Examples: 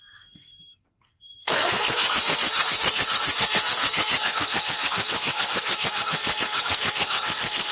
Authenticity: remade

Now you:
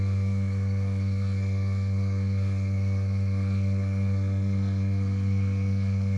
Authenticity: remade